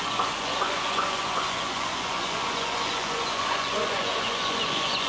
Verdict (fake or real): fake